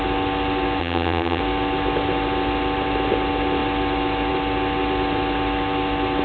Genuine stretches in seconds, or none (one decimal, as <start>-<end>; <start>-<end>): 0.0-0.8; 1.4-6.2